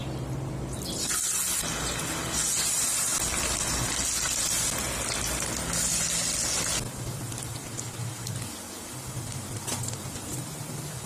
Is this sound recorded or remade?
recorded